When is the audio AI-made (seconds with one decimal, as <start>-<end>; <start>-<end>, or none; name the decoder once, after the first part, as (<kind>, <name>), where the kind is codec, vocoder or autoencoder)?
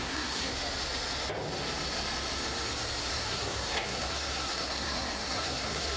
0.0-0.5 (codec, SNAC); 3.0-6.0